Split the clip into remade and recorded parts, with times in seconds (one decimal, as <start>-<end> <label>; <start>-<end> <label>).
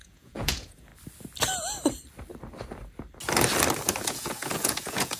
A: 0.0-0.9 remade; 0.9-4.0 recorded; 4.0-5.2 remade